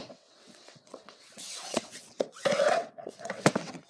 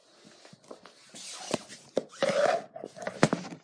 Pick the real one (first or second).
second